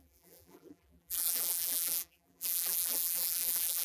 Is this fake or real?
fake